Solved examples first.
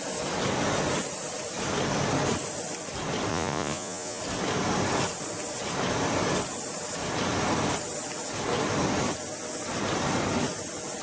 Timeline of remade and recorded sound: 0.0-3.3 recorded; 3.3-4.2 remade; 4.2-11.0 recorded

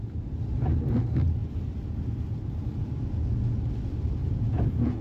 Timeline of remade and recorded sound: 0.0-4.2 recorded; 4.2-5.0 remade

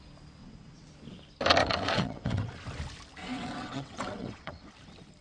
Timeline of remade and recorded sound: 0.0-0.4 recorded; 0.4-0.9 remade; 0.9-1.6 recorded; 1.6-2.5 remade; 2.5-3.2 recorded; 3.2-4.7 remade; 4.7-5.2 recorded